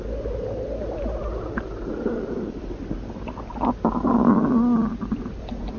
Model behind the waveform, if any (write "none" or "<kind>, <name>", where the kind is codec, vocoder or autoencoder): none